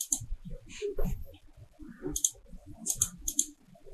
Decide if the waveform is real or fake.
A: fake